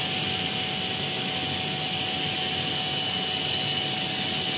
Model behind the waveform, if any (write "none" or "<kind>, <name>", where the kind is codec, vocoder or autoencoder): none